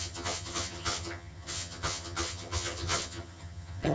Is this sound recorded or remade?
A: remade